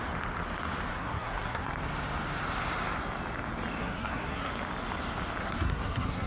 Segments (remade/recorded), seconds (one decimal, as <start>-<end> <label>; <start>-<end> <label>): 0.0-0.9 recorded; 0.9-1.7 remade; 1.7-3.8 recorded; 3.8-4.5 remade; 4.5-5.4 recorded; 5.4-6.3 remade